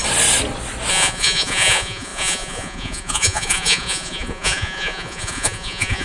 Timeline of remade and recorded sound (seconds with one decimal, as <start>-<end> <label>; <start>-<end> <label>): 0.0-0.9 recorded; 0.9-6.0 remade